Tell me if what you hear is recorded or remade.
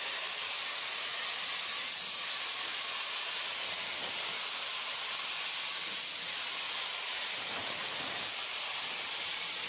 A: recorded